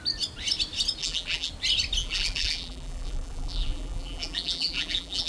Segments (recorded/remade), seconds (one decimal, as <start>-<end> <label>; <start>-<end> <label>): 0.0-1.0 recorded; 1.0-1.5 remade; 1.5-2.0 recorded; 2.0-5.3 remade